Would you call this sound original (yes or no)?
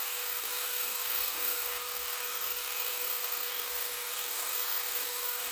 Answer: no